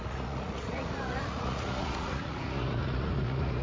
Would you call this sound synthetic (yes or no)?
yes